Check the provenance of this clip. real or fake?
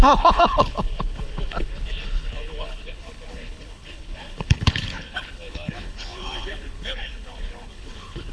fake